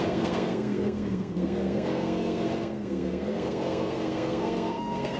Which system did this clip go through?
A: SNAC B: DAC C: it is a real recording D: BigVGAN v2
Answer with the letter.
A